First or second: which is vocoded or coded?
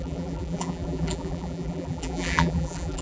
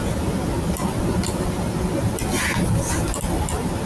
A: first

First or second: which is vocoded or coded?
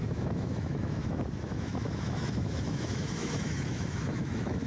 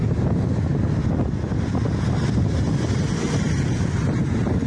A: first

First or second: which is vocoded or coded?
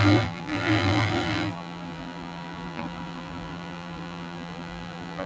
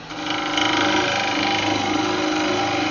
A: first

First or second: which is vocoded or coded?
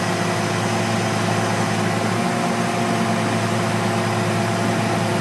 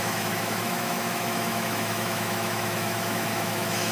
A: second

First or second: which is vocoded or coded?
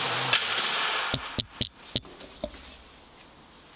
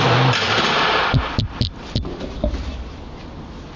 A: second